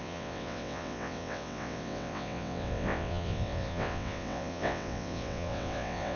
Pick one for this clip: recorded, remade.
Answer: remade